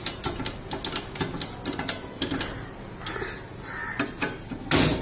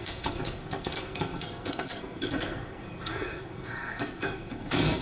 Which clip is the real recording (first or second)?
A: first